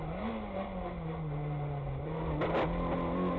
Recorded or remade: recorded